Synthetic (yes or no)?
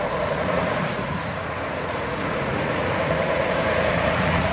yes